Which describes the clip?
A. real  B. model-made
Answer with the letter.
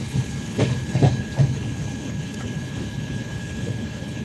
B